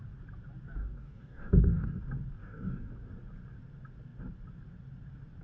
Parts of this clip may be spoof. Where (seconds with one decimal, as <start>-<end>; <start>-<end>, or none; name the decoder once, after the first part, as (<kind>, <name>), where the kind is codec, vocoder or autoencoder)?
0.8-2.0 (codec, DAC); 2.4-2.9